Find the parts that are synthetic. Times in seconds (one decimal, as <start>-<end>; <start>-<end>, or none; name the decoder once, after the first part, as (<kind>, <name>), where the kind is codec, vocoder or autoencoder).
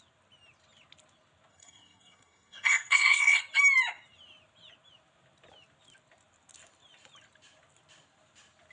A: 1.5-3.4 (codec, SNAC)